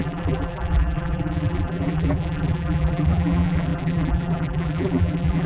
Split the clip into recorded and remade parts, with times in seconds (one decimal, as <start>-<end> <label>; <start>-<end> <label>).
0.0-5.5 remade